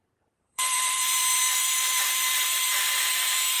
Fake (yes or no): yes